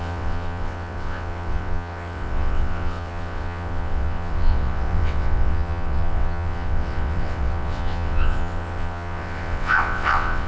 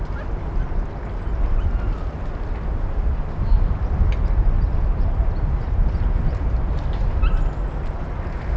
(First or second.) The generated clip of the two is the first